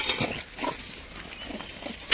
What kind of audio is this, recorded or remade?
recorded